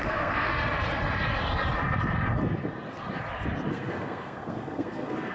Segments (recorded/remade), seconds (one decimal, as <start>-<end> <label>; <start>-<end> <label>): 0.0-0.5 remade; 0.5-3.7 recorded; 3.7-5.3 remade